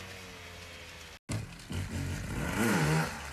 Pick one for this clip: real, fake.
real